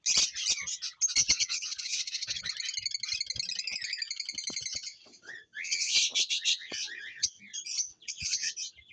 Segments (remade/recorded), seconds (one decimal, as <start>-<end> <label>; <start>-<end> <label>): 0.0-1.2 recorded; 1.2-2.4 remade; 2.4-4.7 recorded; 4.7-7.4 remade; 7.4-7.9 recorded; 7.9-8.5 remade; 8.5-8.9 recorded